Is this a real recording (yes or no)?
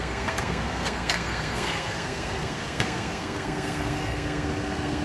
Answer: no